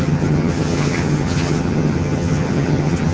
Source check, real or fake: fake